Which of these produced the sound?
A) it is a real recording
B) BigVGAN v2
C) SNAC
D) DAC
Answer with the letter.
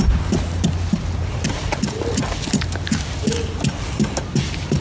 A